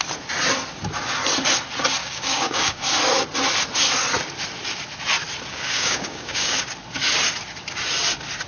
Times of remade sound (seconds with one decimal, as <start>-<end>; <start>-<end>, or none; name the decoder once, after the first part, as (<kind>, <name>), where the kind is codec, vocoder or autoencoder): 2.0-2.8 (codec, DAC); 5.5-6.6